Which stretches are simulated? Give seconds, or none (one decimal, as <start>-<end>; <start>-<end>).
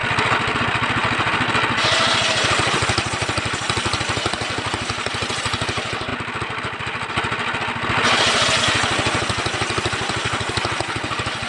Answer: 1.0-5.3